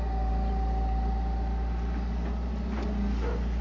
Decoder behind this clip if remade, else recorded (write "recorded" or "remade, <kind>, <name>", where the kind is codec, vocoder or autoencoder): recorded